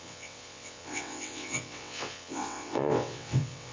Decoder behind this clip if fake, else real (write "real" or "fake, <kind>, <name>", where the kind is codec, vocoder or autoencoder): fake, vocoder, WaveNeXt